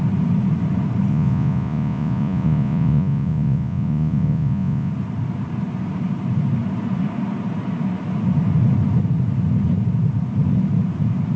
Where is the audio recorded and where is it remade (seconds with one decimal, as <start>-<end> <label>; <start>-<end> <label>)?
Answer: 0.0-1.1 recorded; 1.1-4.9 remade; 4.9-11.4 recorded

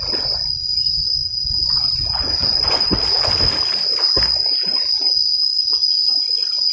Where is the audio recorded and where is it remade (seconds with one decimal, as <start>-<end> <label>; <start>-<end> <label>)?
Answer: 0.0-1.2 recorded; 1.2-2.9 remade; 2.9-5.5 recorded; 5.5-6.7 remade

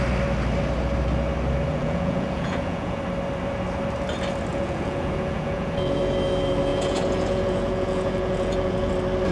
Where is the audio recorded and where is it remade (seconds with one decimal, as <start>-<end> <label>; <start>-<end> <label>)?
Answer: 0.0-1.7 recorded; 1.7-3.0 remade; 3.0-4.5 recorded; 4.5-6.0 remade; 6.0-6.7 recorded; 6.7-8.9 remade; 8.9-9.3 recorded

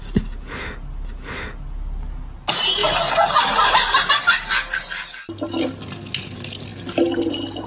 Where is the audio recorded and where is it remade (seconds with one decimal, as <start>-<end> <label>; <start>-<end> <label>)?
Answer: 0.0-7.7 recorded

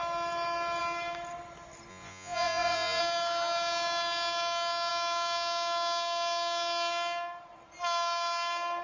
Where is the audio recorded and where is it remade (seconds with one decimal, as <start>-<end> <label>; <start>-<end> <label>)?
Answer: 0.0-1.9 recorded; 1.9-3.0 remade; 3.0-8.8 recorded